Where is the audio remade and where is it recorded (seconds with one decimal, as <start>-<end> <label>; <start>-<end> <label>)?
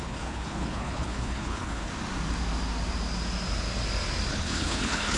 0.0-1.9 remade; 1.9-4.3 recorded; 4.3-5.2 remade